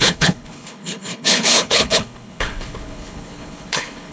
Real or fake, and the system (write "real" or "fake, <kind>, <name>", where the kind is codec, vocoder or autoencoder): fake, codec, HILCodec